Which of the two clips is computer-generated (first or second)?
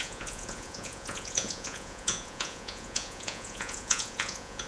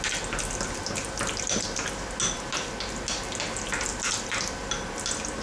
first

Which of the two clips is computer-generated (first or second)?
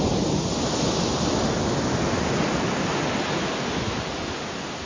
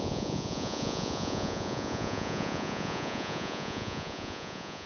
second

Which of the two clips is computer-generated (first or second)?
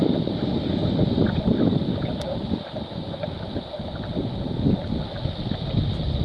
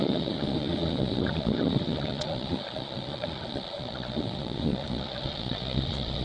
second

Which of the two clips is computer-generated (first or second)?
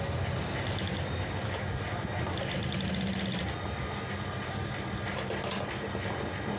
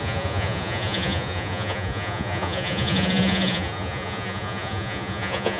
second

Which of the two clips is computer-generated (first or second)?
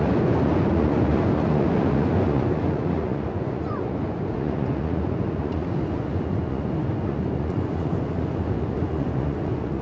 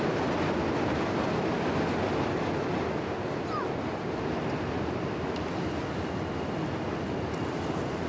first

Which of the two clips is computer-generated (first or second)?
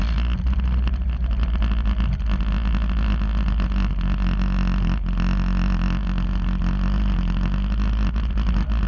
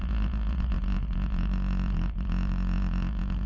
second